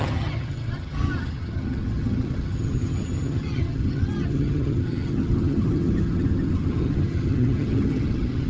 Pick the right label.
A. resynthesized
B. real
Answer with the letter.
A